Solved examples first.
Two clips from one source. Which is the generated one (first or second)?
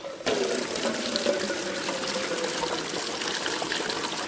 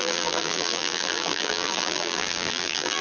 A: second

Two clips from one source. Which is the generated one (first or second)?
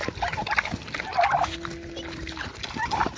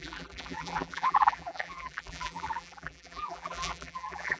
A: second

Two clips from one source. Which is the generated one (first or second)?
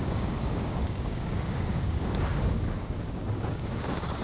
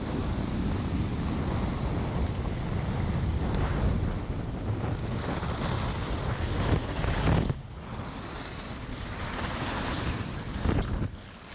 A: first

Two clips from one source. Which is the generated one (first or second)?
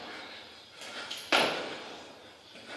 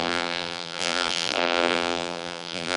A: second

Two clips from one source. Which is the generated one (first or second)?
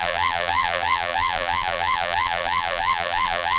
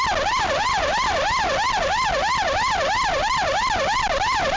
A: first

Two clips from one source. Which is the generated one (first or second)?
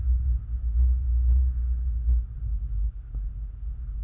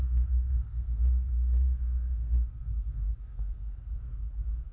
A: second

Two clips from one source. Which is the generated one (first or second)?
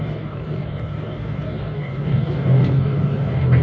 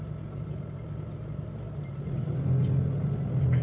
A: first